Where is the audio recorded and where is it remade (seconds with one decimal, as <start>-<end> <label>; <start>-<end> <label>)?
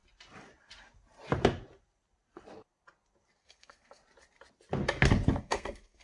0.0-3.4 recorded; 3.4-4.0 remade; 4.0-5.4 recorded; 5.4-6.0 remade